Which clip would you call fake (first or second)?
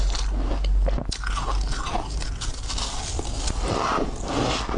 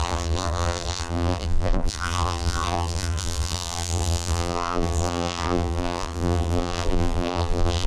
second